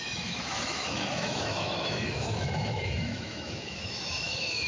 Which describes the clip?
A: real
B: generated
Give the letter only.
B